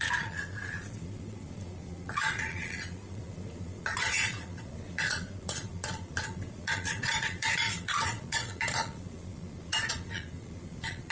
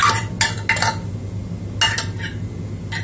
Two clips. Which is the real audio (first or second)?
second